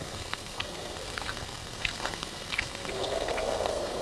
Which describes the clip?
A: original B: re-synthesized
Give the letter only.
B